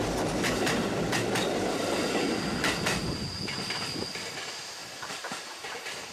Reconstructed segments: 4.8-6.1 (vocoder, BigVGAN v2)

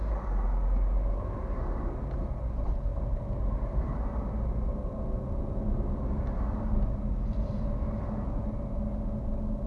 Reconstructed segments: none

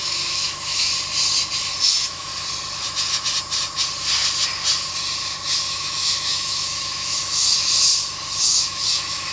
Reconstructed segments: 0.0-0.9 (autoencoder, DAC-VAE); 1.8-2.3; 5.7-7.7; 8.4-9.3

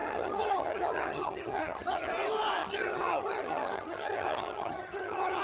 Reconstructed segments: 0.0-2.1 (vocoder, HiFi-GAN); 2.6-5.4

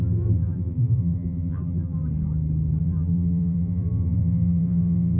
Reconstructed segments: 0.0-2.0 (vocoder, BigVGAN v2); 2.8-5.2